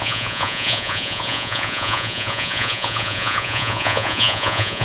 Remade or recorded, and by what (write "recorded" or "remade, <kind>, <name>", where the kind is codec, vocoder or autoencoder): remade, vocoder, Vocos